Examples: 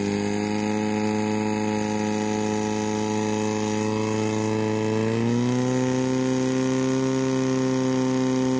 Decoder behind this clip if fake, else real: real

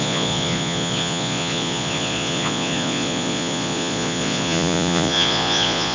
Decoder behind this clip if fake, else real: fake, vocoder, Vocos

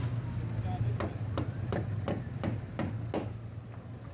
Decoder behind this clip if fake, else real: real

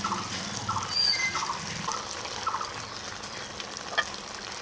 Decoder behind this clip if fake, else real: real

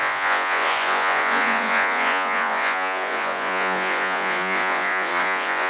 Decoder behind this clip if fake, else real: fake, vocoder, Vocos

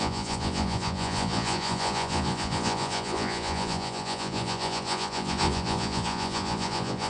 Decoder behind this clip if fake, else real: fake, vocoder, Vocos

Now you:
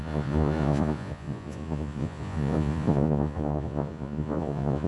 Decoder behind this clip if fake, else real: fake, vocoder, Vocos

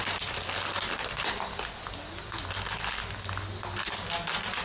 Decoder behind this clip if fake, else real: real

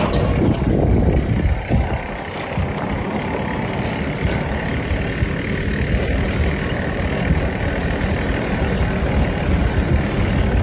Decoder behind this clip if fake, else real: real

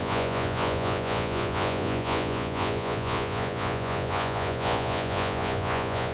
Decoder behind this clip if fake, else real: fake, vocoder, Vocos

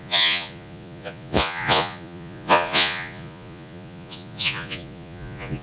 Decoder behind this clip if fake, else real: fake, vocoder, Vocos